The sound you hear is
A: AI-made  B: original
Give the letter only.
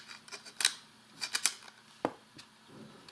B